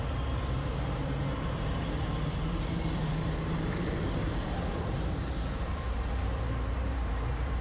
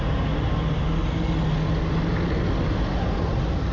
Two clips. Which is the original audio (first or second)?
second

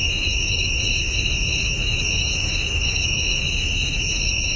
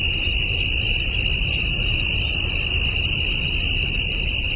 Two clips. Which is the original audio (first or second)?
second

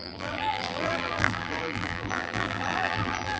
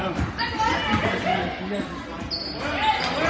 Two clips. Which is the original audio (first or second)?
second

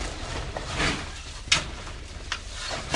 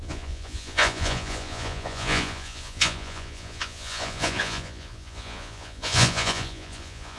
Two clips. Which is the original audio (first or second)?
first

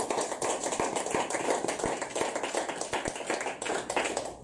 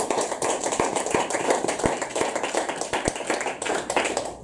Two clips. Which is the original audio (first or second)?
first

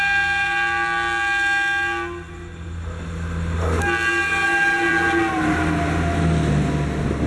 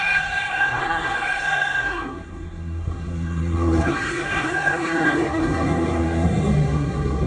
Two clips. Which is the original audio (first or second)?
first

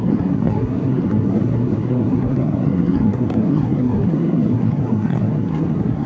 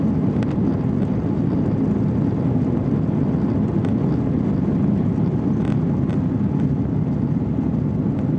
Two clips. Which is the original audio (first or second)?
second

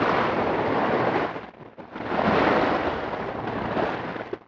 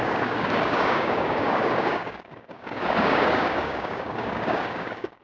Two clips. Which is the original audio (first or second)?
first